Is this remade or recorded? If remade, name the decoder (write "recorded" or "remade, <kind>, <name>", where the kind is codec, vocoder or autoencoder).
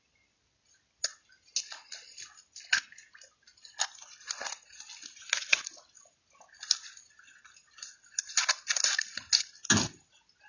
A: recorded